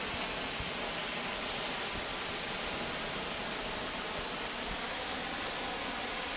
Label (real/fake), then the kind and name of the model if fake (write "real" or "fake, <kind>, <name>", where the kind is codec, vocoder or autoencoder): real